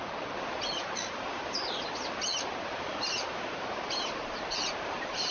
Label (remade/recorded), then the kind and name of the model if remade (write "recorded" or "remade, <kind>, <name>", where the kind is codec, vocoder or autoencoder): remade, vocoder, BigVGAN v2